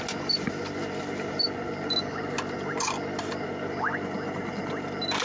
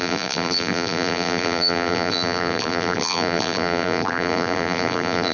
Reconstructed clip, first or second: second